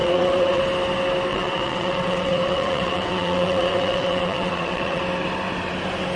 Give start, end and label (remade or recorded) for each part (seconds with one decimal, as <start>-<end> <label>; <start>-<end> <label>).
0.0-0.6 remade; 0.6-1.3 recorded; 1.3-5.0 remade; 5.0-6.2 recorded